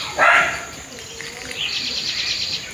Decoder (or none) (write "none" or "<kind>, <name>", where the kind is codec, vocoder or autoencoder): vocoder, BigVGAN v2